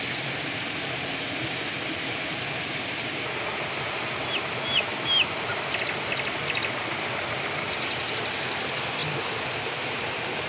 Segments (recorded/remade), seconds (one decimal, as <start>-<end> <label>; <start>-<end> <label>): 0.0-10.5 recorded